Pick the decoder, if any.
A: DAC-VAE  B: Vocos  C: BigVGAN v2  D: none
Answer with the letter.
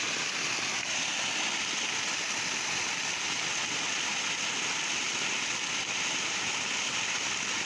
D